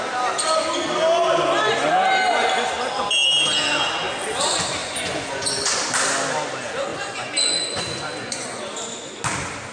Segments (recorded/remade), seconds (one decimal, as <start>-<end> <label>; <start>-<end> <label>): 0.0-4.8 recorded; 4.8-5.8 remade; 5.8-6.9 recorded; 6.9-8.7 remade; 8.7-9.7 recorded